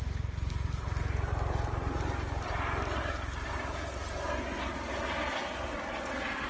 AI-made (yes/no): no